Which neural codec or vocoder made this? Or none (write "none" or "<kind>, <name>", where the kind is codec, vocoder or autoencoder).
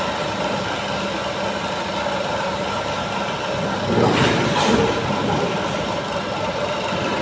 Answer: none